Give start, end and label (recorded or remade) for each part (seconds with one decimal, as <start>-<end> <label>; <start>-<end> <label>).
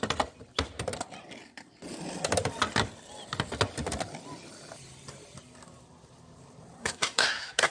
0.0-6.8 recorded; 6.8-7.7 remade